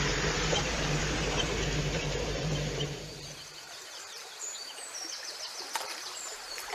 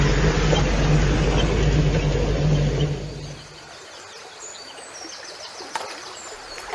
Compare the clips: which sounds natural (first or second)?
second